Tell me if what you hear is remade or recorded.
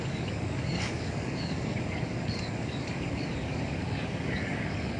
remade